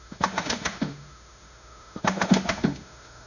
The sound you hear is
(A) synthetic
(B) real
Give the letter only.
A